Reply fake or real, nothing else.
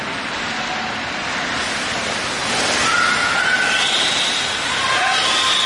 real